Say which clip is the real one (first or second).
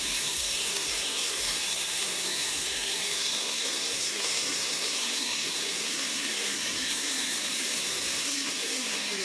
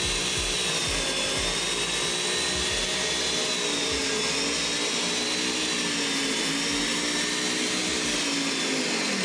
second